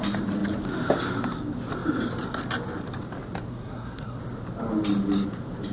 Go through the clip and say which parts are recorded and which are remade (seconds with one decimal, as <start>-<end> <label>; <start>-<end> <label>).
0.0-3.5 recorded; 3.5-4.2 remade; 4.2-5.7 recorded